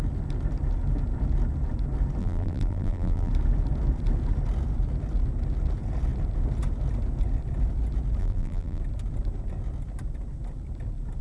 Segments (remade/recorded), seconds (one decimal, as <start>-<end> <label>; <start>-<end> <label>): 0.0-2.2 recorded; 2.2-3.3 remade; 3.3-8.2 recorded; 8.2-8.8 remade; 8.8-11.2 recorded